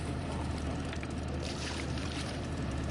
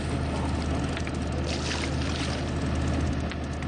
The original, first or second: second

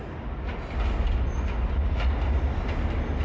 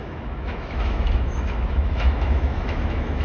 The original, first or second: first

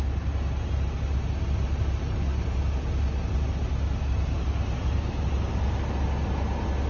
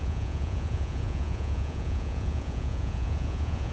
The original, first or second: first